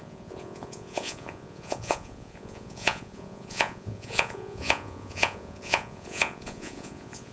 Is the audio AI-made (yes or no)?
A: yes